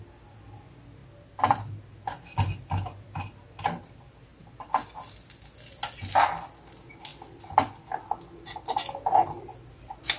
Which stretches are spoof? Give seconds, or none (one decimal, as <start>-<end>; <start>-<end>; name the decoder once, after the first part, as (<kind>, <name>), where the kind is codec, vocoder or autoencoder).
none